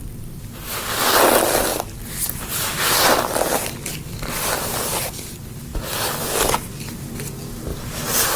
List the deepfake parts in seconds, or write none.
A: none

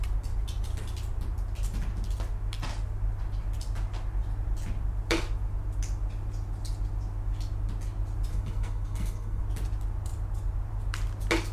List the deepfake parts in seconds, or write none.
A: 8.3-9.4 (codec, SNAC)

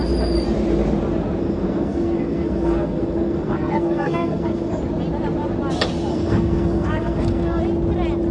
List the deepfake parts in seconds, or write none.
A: 1.4-4.8 (codec, SNAC); 6.1-7.6

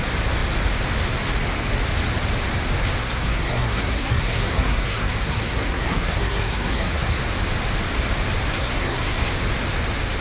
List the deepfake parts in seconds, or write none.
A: 3.0-7.2 (codec, SNAC); 8.5-9.3

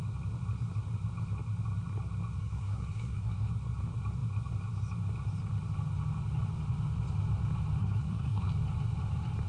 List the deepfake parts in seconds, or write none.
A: 2.4-3.5 (codec, SNAC); 7.8-8.5